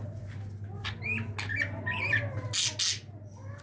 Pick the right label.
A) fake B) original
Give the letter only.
B